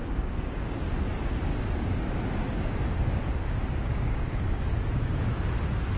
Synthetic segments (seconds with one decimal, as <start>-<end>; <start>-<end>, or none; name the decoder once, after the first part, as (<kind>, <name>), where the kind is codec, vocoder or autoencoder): 0.0-0.9 (codec, DAC); 1.5-5.1

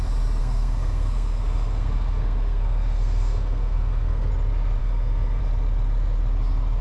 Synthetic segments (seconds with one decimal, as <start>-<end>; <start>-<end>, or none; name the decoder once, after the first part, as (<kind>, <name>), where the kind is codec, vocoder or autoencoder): 0.4-4.3 (codec, SNAC); 4.8-5.4

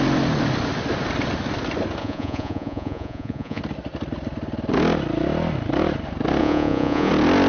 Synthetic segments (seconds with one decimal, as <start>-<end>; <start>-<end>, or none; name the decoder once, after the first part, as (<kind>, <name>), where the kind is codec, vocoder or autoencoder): 2.0-3.6 (vocoder, Vocos); 6.4-7.1

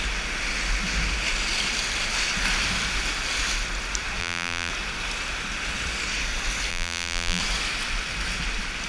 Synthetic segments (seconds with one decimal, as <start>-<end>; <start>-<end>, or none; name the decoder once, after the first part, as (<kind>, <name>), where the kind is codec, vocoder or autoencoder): 4.2-4.7 (vocoder, BigVGAN v2); 6.7-7.4

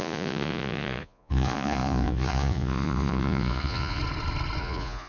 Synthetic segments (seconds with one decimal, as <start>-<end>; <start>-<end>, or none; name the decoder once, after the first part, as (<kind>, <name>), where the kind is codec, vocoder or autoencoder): 0.0-4.0 (vocoder, Vocos); 4.6-5.1

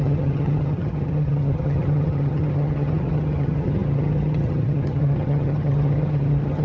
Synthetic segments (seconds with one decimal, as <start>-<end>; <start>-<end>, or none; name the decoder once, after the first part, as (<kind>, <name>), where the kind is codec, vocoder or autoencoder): 0.0-6.6 (vocoder, HiFi-GAN)

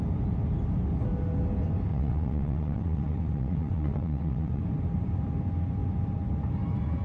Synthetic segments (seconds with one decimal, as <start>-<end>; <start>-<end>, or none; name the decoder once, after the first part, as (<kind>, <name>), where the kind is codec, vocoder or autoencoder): 1.9-4.6 (vocoder, WaveNeXt)

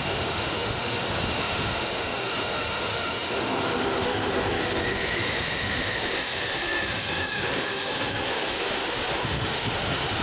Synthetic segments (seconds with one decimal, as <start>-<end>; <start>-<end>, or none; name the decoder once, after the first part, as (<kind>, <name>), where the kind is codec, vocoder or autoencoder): 0.0-10.2 (autoencoder, DAC-VAE)